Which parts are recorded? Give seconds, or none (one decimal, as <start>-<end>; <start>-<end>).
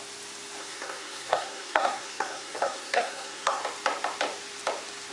0.0-0.6; 3.6-5.1